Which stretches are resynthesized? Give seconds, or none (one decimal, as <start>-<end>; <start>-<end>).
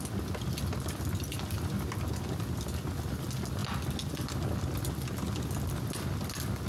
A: none